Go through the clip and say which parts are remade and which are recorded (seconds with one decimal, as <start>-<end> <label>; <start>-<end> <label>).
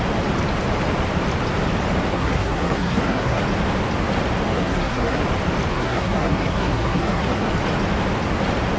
0.0-2.1 recorded; 2.1-3.4 remade; 3.4-4.5 recorded; 4.5-5.2 remade; 5.2-5.7 recorded; 5.7-7.5 remade; 7.5-8.8 recorded